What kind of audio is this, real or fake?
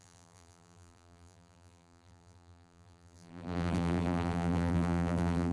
fake